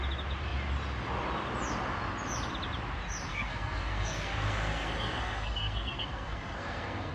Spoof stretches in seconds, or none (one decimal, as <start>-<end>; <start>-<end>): 3.3-7.1